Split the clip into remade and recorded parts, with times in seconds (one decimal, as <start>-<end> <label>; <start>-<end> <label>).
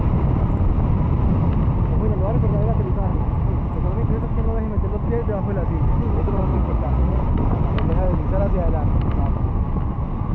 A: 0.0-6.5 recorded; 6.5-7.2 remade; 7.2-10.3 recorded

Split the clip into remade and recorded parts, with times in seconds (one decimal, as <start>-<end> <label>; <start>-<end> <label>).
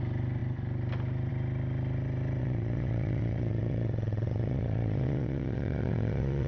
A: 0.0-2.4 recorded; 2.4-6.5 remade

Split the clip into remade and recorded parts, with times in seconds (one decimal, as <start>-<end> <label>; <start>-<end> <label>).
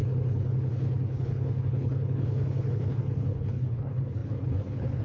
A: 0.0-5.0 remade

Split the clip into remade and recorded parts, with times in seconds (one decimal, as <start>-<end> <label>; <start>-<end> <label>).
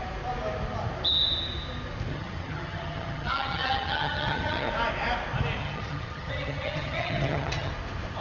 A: 0.0-2.1 recorded; 2.1-4.7 remade; 4.7-5.6 recorded; 5.6-7.7 remade; 7.7-8.2 recorded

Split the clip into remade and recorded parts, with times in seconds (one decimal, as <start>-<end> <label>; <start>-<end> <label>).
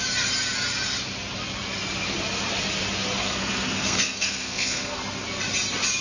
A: 0.0-3.2 recorded; 3.2-5.0 remade; 5.0-6.0 recorded